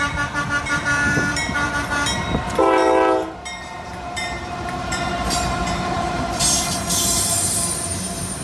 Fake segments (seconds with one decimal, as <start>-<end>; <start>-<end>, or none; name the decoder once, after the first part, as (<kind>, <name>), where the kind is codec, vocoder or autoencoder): 0.0-2.8 (vocoder, BigVGAN v2); 3.6-8.4